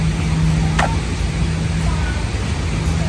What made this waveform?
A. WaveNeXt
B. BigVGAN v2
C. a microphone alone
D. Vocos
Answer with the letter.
C